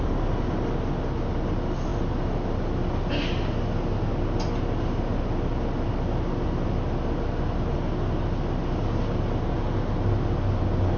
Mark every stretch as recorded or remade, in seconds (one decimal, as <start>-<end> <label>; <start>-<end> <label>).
0.0-11.0 recorded

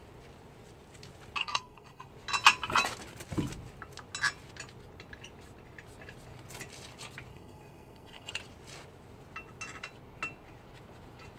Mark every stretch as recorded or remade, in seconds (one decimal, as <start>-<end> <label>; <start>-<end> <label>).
0.0-1.4 recorded; 1.4-2.1 remade; 2.1-7.3 recorded; 7.3-8.3 remade; 8.3-11.4 recorded